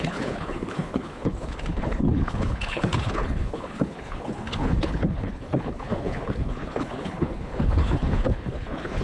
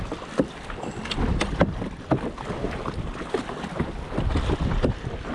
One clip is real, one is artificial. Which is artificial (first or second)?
first